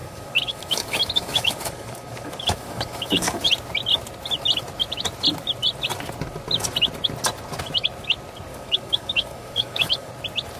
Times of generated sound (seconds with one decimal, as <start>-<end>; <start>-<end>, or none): 0.0-3.5; 8.5-10.1